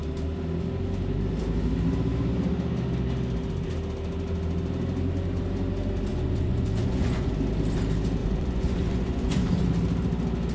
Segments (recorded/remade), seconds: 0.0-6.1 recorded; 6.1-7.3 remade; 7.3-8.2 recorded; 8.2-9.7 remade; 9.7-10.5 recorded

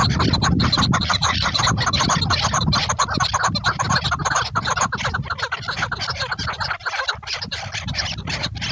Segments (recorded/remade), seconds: 0.0-1.0 recorded; 1.0-1.6 remade; 1.6-8.7 recorded

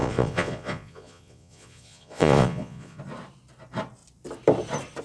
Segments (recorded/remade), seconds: 0.0-3.0 remade; 3.0-5.0 recorded

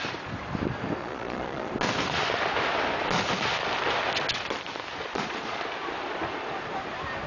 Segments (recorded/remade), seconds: 0.0-1.0 recorded; 1.0-1.7 remade; 1.7-5.0 recorded; 5.0-5.6 remade; 5.6-7.3 recorded